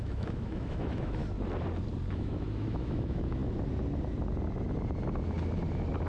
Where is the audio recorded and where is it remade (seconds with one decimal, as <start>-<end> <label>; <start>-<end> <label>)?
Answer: 0.0-1.2 remade; 1.2-2.1 recorded; 2.1-3.4 remade; 3.4-6.1 recorded